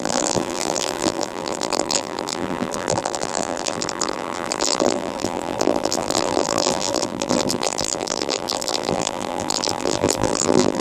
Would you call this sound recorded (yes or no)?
no